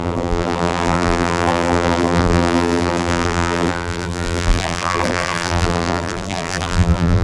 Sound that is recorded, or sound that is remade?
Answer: remade